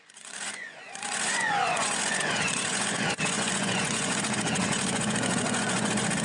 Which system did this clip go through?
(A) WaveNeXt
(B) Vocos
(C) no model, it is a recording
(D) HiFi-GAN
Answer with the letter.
B